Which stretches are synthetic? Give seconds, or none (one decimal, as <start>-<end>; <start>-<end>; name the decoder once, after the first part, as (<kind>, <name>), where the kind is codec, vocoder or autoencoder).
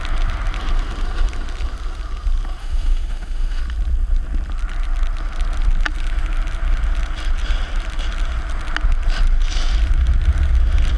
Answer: 2.6-3.6 (autoencoder, DAC-VAE)